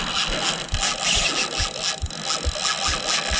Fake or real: real